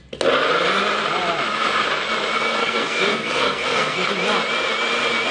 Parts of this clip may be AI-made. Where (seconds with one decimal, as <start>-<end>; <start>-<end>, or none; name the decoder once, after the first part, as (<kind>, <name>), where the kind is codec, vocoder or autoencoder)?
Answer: 2.6-4.1 (codec, SNAC)